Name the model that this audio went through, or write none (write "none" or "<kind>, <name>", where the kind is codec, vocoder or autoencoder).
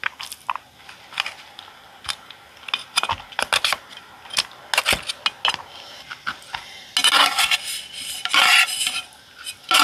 none